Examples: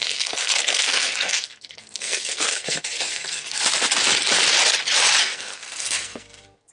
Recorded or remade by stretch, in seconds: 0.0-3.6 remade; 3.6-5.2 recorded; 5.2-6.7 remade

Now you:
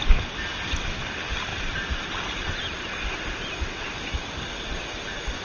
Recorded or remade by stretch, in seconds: 0.0-5.4 recorded

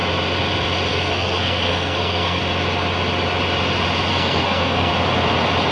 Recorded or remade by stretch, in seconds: 0.0-0.9 recorded; 0.9-2.4 remade; 2.4-4.1 recorded; 4.1-4.9 remade; 4.9-5.7 recorded

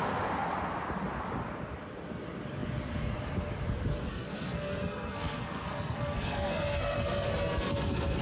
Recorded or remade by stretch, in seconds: 0.0-4.1 recorded; 4.1-8.2 remade